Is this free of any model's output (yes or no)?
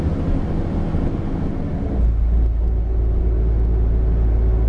yes